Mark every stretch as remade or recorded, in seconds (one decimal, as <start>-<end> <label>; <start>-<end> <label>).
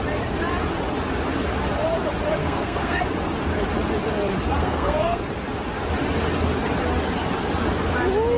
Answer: 0.0-2.4 recorded; 2.4-3.0 remade; 3.0-4.6 recorded; 4.6-5.2 remade; 5.2-8.4 recorded